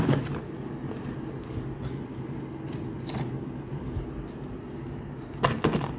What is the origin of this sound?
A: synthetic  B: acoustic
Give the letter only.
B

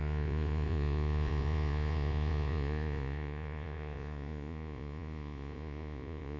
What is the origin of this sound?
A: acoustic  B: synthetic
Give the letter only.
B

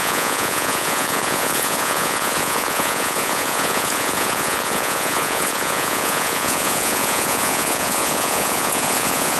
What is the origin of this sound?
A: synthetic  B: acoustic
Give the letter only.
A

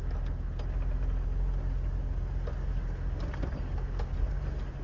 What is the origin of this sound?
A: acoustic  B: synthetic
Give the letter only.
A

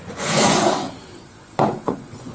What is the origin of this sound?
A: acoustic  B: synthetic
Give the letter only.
B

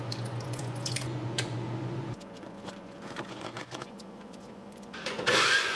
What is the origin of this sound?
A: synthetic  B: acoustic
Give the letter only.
A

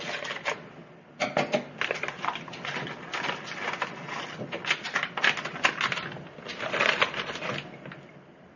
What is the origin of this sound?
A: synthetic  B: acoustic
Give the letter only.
B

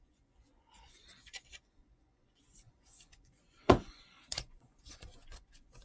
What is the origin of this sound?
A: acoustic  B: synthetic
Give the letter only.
B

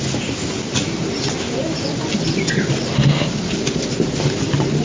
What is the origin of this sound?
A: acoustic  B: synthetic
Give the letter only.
A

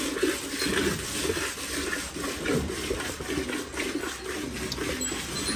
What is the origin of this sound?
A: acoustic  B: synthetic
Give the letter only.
A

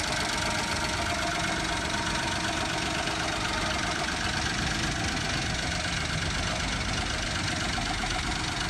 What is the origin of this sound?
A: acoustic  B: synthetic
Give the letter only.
A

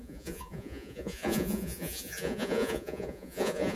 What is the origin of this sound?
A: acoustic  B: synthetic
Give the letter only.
B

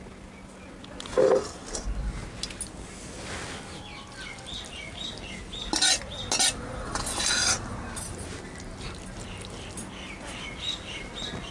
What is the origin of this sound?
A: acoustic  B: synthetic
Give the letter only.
A